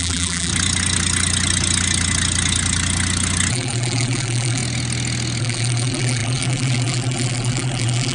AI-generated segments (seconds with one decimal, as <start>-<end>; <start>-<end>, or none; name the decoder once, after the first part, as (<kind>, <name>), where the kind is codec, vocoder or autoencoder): 0.0-0.5 (vocoder, BigVGAN v2); 3.5-4.6; 5.4-8.1